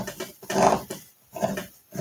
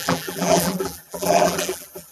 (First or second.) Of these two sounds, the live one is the first